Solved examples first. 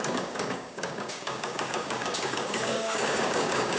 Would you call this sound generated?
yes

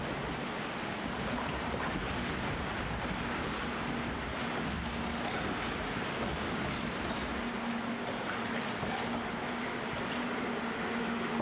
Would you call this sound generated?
no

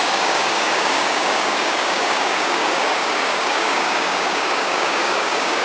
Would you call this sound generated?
yes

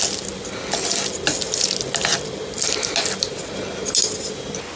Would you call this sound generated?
no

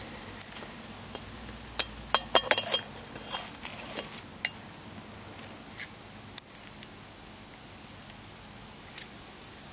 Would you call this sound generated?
no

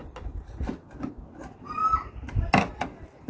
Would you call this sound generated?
no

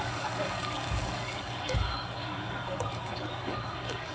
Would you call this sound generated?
yes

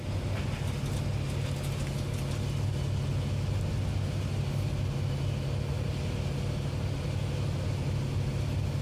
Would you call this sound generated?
no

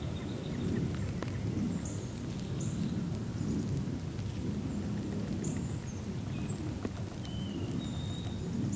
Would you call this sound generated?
no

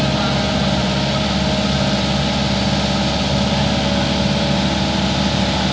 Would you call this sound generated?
no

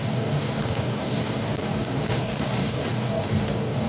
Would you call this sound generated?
yes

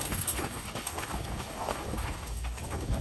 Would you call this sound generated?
yes